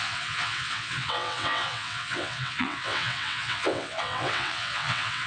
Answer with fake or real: fake